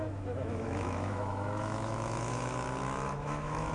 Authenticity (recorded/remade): remade